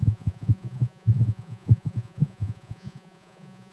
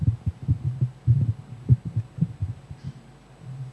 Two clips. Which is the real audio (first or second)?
second